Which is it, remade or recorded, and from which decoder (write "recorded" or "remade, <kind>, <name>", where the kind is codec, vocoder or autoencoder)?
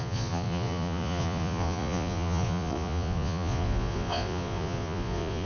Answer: remade, vocoder, Vocos